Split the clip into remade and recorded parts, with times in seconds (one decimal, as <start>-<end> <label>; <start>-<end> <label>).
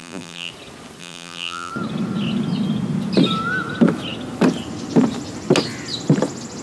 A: 0.0-0.5 remade; 0.5-1.0 recorded; 1.0-1.7 remade; 1.7-6.6 recorded